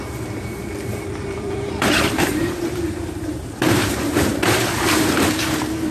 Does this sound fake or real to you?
fake